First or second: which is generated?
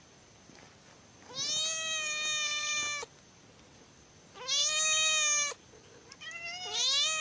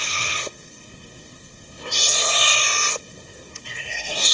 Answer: second